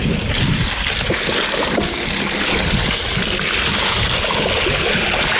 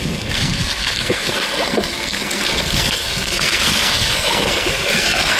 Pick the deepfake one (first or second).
second